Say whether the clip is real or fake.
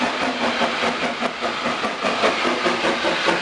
real